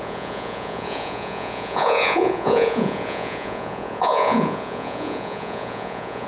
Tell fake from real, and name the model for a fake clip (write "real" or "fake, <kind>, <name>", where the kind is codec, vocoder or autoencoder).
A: fake, vocoder, Vocos